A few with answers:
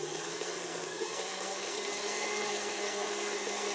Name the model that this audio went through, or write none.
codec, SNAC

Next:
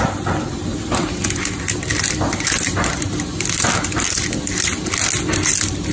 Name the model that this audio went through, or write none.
none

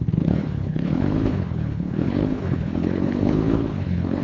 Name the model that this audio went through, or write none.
codec, HILCodec